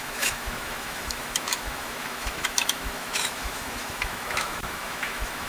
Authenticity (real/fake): fake